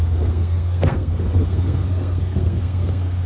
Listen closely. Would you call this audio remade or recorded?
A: remade